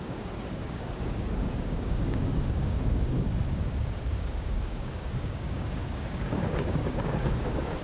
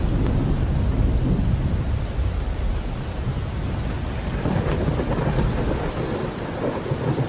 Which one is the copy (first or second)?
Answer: first